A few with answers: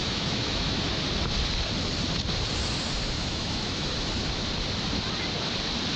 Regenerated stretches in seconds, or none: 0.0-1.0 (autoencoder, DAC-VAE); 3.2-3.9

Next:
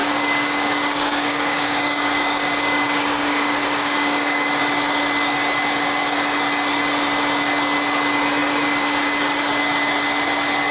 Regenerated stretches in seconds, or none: 0.0-4.6 (codec, DAC)

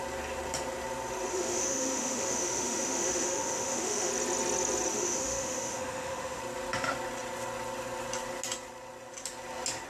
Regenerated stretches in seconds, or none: 1.3-4.1 (autoencoder, DAC-VAE); 4.9-6.4

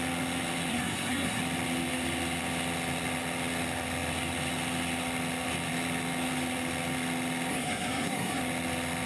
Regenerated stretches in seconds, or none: 0.7-1.4 (codec, SNAC); 7.5-8.4

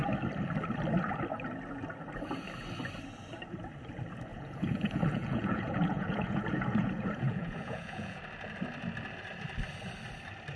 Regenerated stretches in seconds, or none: 4.3-8.2 (vocoder, Vocos)

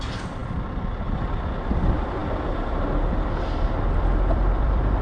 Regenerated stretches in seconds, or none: 0.0-0.4 (vocoder, BigVGAN v2); 1.0-2.2; 3.9-5.0

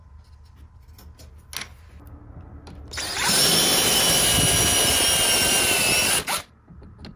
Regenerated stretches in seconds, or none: none